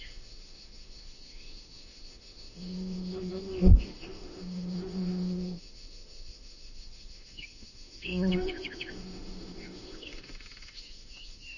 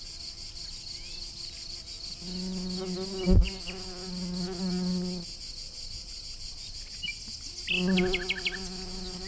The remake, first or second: first